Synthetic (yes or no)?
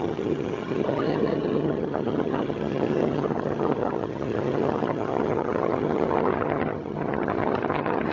yes